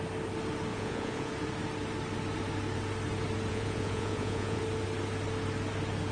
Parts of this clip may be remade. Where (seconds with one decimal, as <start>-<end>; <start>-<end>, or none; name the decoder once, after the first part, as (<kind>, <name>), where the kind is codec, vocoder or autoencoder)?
0.7-1.3 (vocoder, Vocos); 3.5-4.6